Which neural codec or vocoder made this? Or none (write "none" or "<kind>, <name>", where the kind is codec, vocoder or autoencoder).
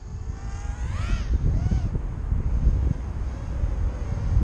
none